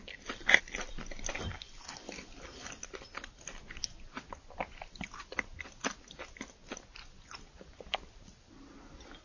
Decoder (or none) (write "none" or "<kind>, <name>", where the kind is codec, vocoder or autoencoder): none